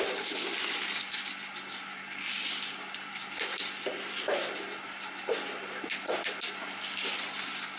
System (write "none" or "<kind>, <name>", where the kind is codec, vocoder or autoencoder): none